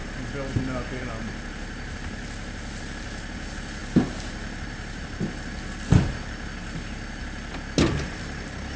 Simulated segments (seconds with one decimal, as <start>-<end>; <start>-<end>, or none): 3.8-5.2